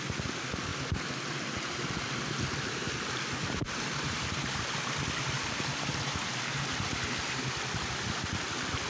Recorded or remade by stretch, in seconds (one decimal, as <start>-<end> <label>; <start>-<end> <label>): 0.0-8.9 recorded